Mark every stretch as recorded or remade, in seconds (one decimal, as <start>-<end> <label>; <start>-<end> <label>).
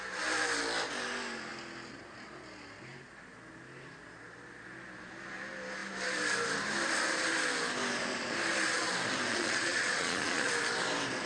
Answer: 0.0-9.3 recorded; 9.3-10.5 remade; 10.5-11.3 recorded